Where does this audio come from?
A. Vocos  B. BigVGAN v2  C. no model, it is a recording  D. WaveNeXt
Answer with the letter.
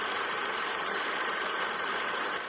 B